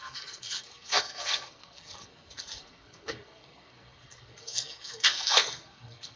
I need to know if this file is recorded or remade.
remade